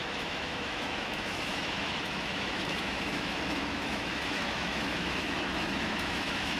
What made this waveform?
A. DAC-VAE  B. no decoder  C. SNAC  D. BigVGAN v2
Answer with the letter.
A